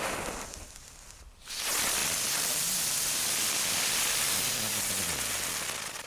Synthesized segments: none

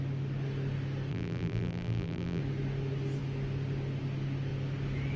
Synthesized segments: 1.1-2.4 (vocoder, BigVGAN v2)

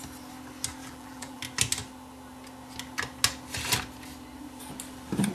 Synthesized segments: 0.8-1.4 (vocoder, BigVGAN v2)

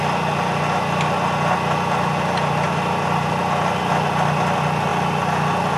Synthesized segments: none

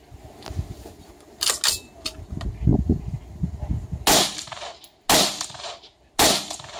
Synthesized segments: none

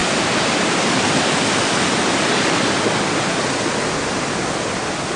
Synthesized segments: 0.0-1.9 (vocoder, BigVGAN v2)

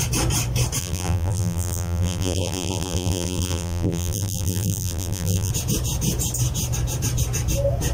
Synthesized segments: 0.8-5.5 (vocoder, BigVGAN v2)

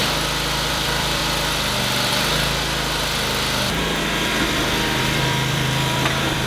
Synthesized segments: 0.7-1.2 (vocoder, BigVGAN v2); 5.0-6.5